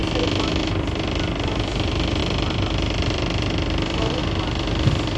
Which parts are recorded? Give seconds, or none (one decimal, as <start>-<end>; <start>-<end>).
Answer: 0.0-0.6